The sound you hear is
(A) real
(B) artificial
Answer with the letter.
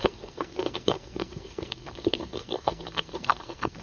B